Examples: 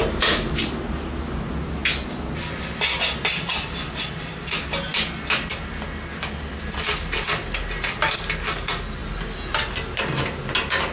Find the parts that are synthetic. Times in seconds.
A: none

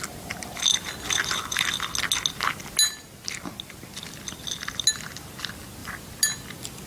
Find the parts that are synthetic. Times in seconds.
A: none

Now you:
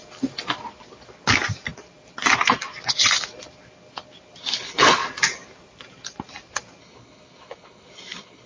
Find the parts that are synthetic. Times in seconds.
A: 4.4-5.0; 6.8-8.5